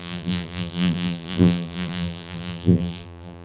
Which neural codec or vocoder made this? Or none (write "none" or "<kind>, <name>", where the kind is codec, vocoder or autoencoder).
vocoder, BigVGAN v2